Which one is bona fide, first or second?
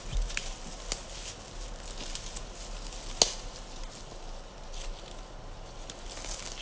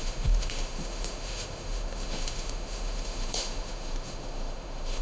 first